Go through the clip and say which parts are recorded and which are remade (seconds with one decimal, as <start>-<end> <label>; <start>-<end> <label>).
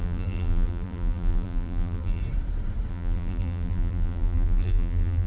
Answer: 0.0-2.2 remade; 2.2-2.9 recorded; 2.9-5.3 remade